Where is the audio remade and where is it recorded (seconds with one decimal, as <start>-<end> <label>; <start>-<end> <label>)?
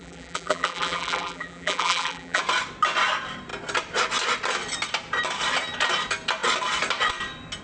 0.0-2.4 remade; 2.4-7.6 recorded